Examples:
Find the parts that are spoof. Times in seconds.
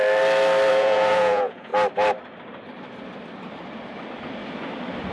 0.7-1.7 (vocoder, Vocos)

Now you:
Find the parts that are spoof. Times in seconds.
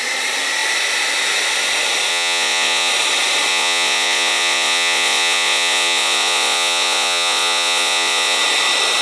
2.1-2.9 (vocoder, Vocos); 3.5-8.4